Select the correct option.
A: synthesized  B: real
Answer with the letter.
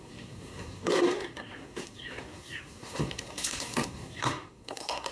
A